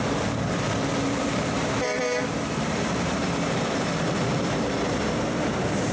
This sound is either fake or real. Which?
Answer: fake